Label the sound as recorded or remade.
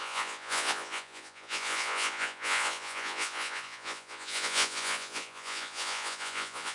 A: remade